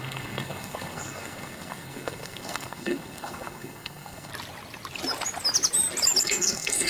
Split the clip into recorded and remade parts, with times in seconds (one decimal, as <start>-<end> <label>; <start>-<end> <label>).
0.0-4.3 remade; 4.3-6.2 recorded; 6.2-6.9 remade